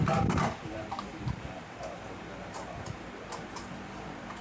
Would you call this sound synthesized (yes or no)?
yes